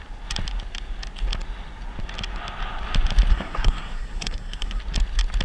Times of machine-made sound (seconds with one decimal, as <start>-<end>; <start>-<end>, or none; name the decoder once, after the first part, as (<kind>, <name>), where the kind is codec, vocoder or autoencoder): 3.3-4.8 (codec, SNAC)